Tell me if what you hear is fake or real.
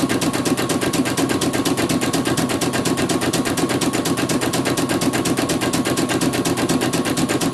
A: real